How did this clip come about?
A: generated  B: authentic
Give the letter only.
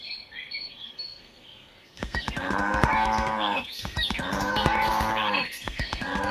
A